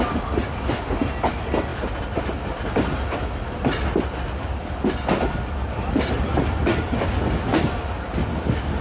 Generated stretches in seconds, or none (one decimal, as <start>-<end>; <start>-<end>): none